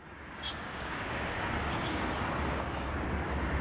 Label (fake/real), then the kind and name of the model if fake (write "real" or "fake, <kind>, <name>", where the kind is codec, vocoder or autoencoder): fake, codec, DAC